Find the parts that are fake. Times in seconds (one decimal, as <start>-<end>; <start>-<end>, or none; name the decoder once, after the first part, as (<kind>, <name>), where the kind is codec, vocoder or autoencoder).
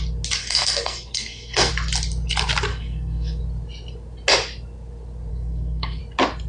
0.4-1.7 (codec, SNAC); 2.7-3.4; 5.3-6.0